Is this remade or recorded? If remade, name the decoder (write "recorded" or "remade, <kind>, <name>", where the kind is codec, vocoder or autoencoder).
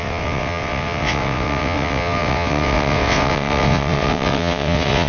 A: remade, vocoder, WaveNeXt